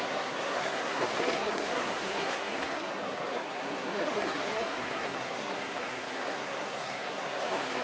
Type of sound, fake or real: fake